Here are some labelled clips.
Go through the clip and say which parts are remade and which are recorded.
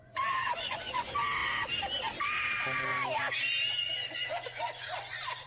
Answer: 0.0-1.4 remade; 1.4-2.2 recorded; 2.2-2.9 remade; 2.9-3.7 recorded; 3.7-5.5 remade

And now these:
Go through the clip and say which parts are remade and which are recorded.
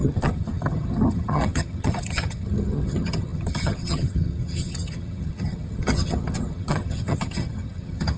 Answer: 0.0-8.2 remade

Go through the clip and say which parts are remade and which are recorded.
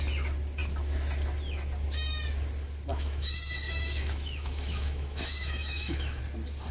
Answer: 0.0-2.9 recorded; 2.9-6.2 remade; 6.2-6.7 recorded